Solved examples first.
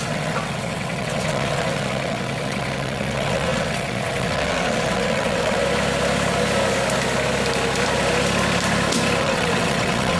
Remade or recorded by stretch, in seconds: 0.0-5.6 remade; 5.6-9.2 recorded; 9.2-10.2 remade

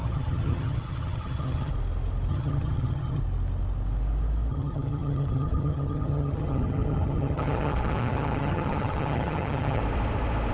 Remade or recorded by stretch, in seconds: 0.0-1.7 remade; 1.7-2.3 recorded; 2.3-3.2 remade; 3.2-4.5 recorded; 4.5-9.8 remade; 9.8-10.5 recorded

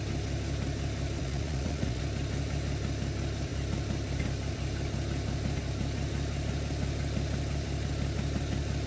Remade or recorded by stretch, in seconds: 0.0-1.2 recorded; 1.2-2.0 remade; 2.0-8.9 recorded

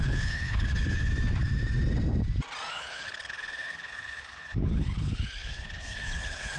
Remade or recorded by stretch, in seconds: 0.0-1.1 remade; 1.1-2.7 recorded; 2.7-6.6 remade

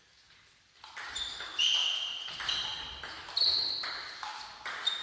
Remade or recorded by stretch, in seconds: 0.0-5.0 recorded